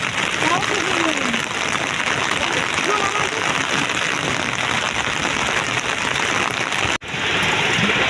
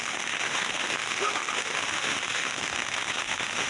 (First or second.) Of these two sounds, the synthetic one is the second